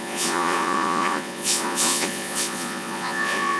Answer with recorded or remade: remade